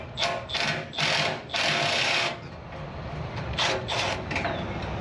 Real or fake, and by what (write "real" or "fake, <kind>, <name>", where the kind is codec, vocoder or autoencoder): real